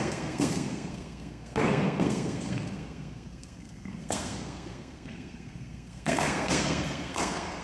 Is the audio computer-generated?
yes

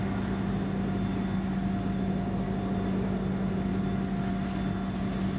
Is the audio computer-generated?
no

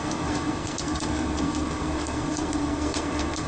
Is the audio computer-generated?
yes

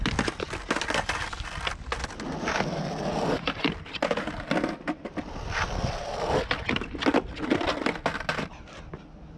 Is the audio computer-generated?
no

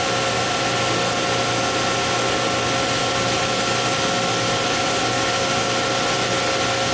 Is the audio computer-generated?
no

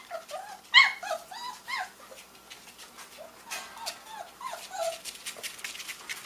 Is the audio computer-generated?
no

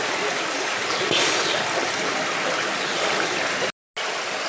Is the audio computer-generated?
no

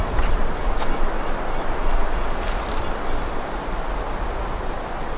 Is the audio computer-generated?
no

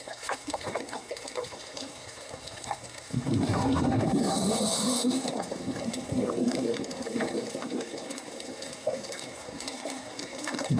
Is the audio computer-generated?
yes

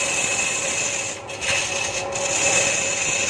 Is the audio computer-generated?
no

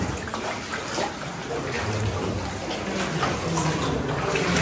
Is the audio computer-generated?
no